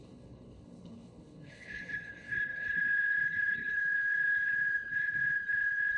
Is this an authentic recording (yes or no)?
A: no